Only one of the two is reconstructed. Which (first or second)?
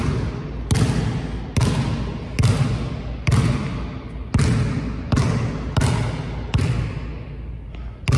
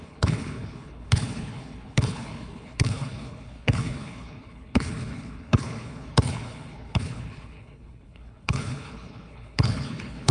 second